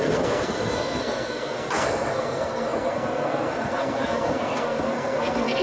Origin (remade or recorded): remade